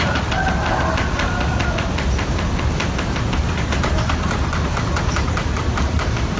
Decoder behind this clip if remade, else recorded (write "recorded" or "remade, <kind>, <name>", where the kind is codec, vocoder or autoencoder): recorded